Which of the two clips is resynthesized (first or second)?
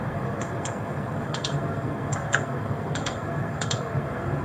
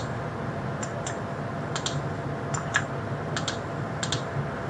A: first